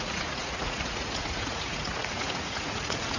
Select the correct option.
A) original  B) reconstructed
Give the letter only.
B